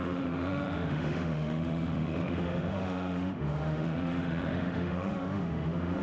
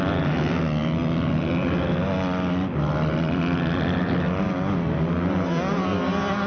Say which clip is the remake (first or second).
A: first